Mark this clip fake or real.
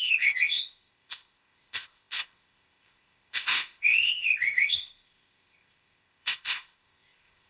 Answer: fake